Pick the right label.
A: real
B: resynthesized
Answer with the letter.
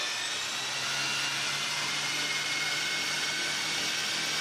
A